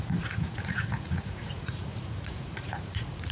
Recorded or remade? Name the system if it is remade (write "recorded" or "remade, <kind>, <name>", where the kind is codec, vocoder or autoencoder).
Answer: remade, vocoder, Vocos